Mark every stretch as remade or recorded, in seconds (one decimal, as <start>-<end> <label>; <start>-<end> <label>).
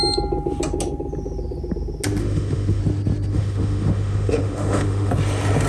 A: 0.0-2.2 recorded; 2.2-2.8 remade; 2.8-3.3 recorded; 3.3-5.1 remade; 5.1-5.7 recorded